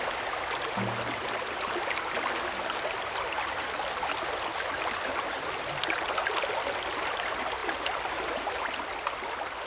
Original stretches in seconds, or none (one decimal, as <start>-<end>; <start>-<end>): 0.0-9.7